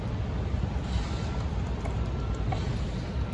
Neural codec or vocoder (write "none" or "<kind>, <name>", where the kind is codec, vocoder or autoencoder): none